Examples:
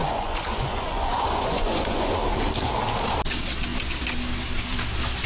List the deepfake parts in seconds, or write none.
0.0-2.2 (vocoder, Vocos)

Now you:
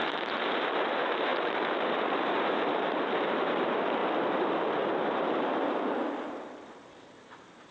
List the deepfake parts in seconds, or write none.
0.0-4.0 (vocoder, BigVGAN v2); 5.1-7.7

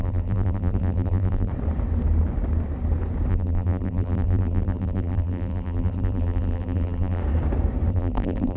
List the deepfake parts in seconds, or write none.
0.0-1.5 (vocoder, BigVGAN v2); 3.3-7.2; 7.9-8.6